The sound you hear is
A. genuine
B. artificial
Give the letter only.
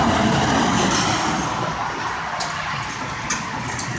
A